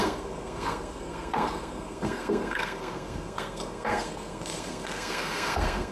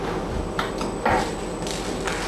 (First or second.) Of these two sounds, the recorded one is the second